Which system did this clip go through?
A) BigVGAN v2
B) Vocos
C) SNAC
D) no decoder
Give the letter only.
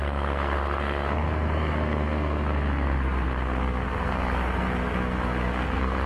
C